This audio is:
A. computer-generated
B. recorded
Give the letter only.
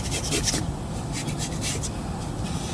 B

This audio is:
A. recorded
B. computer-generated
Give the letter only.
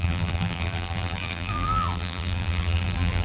B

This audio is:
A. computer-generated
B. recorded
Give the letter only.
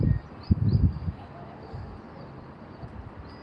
B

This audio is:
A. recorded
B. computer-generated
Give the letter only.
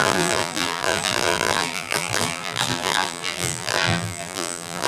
B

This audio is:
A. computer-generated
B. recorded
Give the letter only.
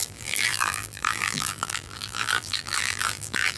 A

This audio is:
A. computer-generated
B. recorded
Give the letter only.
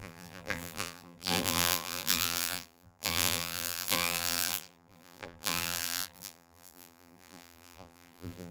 A